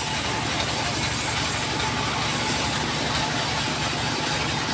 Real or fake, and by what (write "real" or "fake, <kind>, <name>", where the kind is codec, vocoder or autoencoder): real